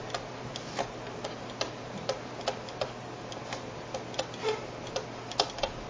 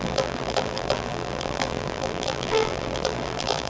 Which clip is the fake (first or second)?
second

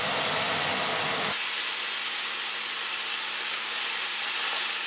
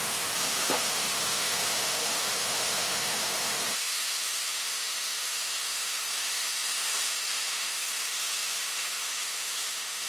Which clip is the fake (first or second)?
second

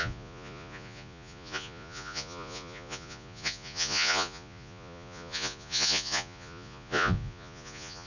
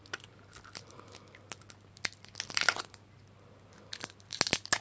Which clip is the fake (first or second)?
first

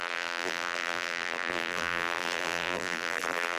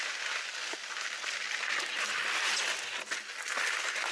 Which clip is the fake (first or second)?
first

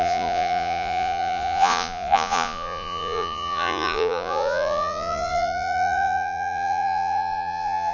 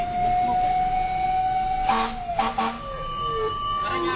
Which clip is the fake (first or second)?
first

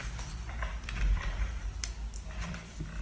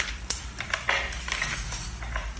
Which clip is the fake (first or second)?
first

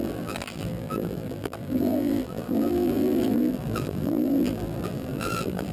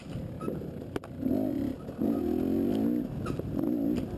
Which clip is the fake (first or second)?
first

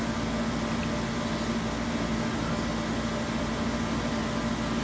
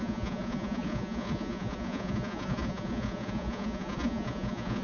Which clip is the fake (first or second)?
second